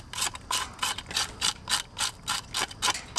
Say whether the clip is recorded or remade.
recorded